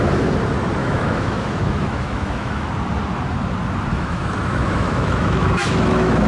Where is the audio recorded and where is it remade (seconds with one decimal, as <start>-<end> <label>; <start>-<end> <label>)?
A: 0.0-0.8 recorded; 0.8-2.7 remade; 2.7-3.9 recorded; 3.9-6.3 remade